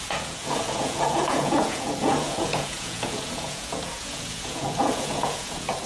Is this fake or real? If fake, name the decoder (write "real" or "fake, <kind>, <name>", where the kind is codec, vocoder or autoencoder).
fake, vocoder, Vocos